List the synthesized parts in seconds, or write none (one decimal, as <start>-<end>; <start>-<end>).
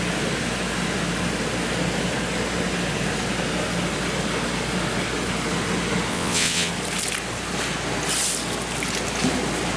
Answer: 6.1-6.7